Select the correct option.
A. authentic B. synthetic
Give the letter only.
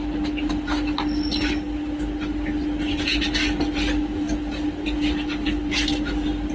A